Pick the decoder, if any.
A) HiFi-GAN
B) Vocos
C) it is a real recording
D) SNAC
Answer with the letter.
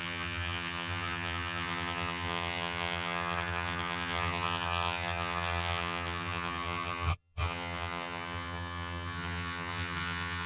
A